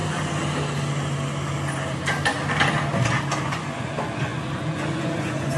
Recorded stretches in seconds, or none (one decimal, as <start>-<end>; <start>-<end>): 0.0-3.4